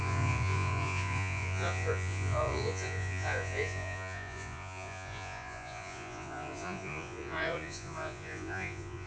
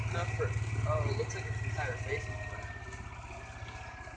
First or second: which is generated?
first